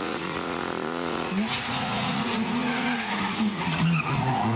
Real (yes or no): no